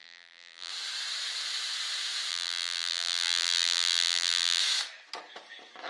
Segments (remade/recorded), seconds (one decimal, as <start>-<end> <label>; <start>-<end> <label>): 0.0-0.7 remade; 0.7-2.3 recorded; 2.3-4.6 remade; 4.6-5.9 recorded